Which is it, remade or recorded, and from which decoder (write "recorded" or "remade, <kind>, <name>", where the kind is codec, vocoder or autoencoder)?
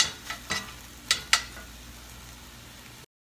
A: recorded